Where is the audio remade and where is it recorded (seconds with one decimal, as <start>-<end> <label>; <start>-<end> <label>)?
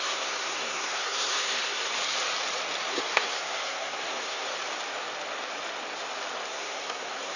0.0-1.9 remade; 1.9-2.9 recorded; 2.9-4.5 remade; 4.5-6.5 recorded; 6.5-7.4 remade